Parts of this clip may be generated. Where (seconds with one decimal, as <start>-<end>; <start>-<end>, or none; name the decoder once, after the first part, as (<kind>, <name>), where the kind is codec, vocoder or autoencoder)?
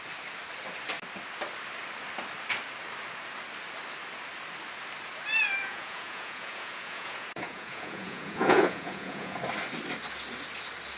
5.6-9.4 (vocoder, Vocos)